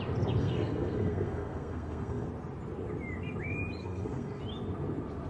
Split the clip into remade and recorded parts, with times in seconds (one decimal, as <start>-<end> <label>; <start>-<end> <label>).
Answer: 0.0-0.4 recorded; 0.4-2.3 remade; 2.3-3.8 recorded; 3.8-4.4 remade; 4.4-5.3 recorded